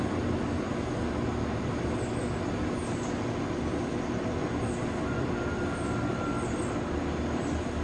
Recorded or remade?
recorded